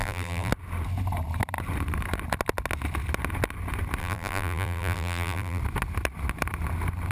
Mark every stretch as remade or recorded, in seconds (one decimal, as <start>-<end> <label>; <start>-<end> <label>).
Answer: 0.0-0.5 remade; 0.5-4.0 recorded; 4.0-5.6 remade; 5.6-7.1 recorded